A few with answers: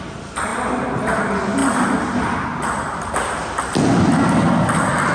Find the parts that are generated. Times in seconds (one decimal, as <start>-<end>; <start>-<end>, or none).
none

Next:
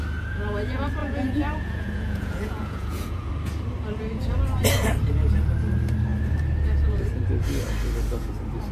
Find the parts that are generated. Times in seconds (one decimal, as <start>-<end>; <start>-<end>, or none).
1.0-3.3

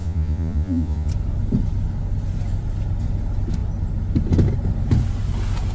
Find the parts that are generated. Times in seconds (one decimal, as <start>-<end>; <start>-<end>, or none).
0.0-1.1

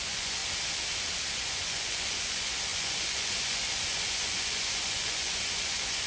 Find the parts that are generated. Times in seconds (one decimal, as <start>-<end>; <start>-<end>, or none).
0.0-0.4; 1.3-6.1